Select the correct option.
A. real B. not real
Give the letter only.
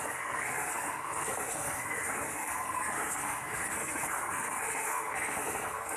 B